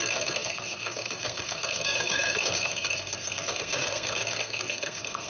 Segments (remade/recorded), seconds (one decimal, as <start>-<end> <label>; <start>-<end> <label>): 0.0-5.3 remade